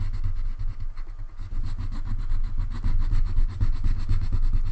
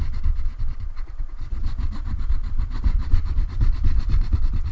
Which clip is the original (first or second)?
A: first